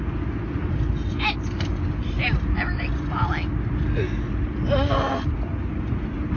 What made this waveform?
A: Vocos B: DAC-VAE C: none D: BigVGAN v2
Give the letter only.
C